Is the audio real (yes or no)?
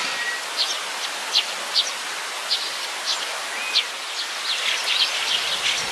yes